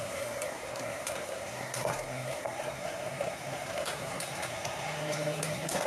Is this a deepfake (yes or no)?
yes